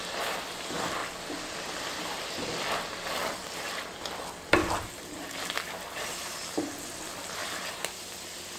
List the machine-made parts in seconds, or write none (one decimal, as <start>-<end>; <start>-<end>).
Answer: 3.2-3.9; 4.6-6.7; 7.4-8.0

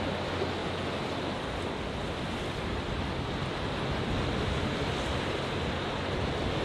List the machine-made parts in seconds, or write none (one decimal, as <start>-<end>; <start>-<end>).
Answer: none

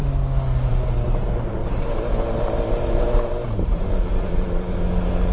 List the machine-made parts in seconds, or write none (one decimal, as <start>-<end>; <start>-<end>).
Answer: 1.6-4.8

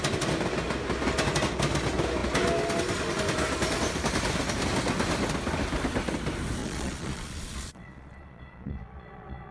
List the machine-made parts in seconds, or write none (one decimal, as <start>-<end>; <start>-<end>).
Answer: 6.6-9.5

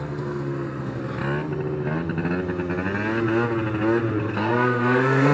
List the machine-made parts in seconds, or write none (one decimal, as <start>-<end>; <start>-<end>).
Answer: 0.0-1.0; 4.2-5.3